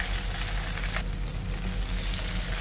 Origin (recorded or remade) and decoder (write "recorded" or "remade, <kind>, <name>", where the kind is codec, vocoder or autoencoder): recorded